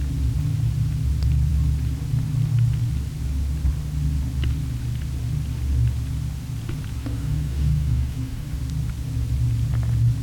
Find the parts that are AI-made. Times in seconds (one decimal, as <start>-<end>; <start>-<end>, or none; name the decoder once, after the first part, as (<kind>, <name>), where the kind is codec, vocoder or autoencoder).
7.0-8.6 (codec, DAC)

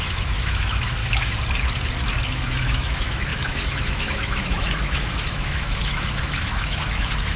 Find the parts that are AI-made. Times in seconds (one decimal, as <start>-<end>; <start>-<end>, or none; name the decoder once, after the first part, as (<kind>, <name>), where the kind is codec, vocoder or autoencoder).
0.0-1.0 (autoencoder, DAC-VAE); 2.3-7.4

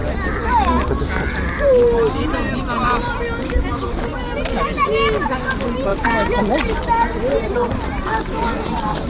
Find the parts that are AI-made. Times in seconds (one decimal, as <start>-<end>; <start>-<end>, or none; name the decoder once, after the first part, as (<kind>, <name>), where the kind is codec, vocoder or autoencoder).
5.9-6.4 (vocoder, BigVGAN v2); 7.2-8.2

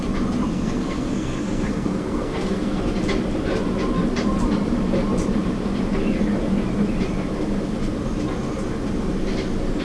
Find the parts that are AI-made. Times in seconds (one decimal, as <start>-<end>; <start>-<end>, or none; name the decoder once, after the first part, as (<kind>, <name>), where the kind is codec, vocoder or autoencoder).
0.5-2.8 (codec, SNAC)

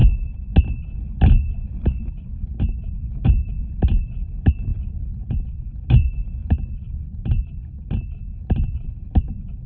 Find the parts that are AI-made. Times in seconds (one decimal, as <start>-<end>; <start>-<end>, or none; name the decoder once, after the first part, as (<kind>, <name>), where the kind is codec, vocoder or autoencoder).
none

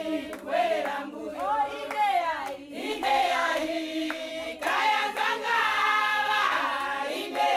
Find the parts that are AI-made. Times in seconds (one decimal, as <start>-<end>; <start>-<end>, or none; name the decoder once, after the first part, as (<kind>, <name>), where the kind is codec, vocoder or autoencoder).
2.9-4.3 (codec, SNAC); 5.4-6.6

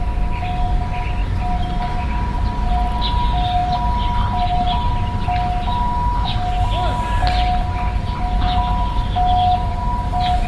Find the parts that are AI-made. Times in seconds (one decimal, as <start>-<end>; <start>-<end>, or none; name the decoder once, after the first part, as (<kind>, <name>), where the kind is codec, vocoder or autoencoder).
none